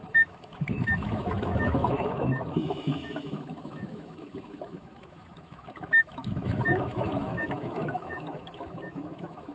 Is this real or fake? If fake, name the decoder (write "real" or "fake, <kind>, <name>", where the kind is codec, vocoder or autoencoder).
fake, autoencoder, DAC-VAE